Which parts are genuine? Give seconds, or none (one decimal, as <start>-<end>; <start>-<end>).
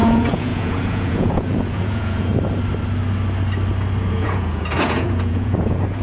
2.3-4.1